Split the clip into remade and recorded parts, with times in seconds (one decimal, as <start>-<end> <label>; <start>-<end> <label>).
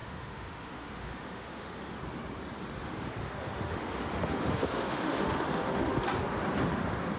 0.0-2.0 remade; 2.0-2.8 recorded; 2.8-6.0 remade; 6.0-7.2 recorded